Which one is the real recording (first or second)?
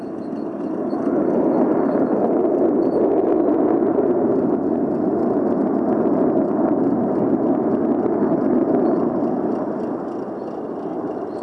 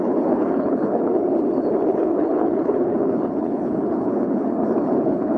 first